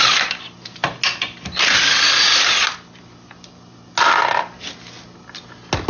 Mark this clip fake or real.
real